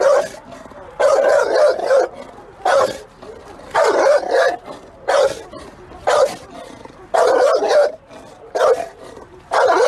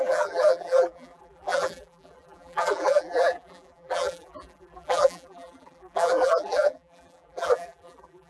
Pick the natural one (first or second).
first